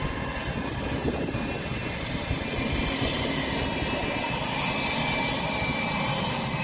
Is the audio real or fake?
real